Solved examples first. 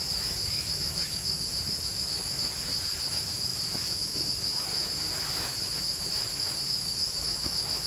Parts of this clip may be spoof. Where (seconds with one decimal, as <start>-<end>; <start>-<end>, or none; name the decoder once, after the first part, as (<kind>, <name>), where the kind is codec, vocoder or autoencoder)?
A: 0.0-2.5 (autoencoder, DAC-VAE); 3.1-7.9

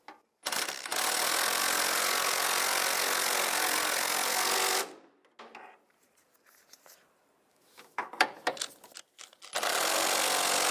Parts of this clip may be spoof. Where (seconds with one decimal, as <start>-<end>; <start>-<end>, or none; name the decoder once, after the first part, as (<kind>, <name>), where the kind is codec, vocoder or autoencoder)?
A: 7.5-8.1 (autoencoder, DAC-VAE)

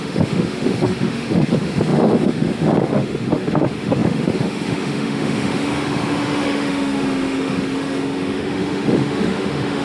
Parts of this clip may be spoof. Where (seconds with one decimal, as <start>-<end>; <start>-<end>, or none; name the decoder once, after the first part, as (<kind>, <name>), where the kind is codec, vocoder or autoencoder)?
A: 0.0-9.8 (autoencoder, DAC-VAE)

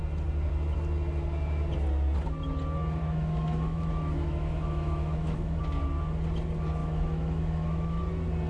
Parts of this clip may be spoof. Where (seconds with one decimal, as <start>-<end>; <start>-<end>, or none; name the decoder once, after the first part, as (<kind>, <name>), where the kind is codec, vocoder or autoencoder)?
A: 3.0-5.6 (autoencoder, DAC-VAE); 6.8-8.0